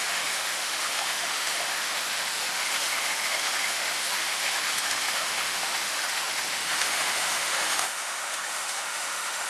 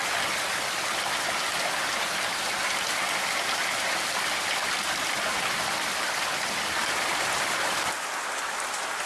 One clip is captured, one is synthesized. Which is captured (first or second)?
second